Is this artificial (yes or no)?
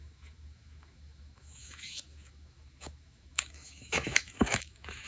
yes